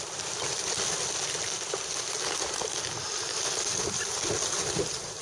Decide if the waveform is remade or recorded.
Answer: recorded